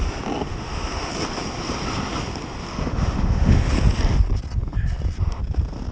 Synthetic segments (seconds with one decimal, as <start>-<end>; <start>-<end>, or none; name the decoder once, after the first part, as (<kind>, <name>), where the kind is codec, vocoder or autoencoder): 0.5-1.1 (autoencoder, DAC-VAE); 2.9-3.7